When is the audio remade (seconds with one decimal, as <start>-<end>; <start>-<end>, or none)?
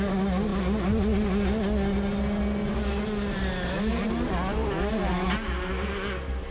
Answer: none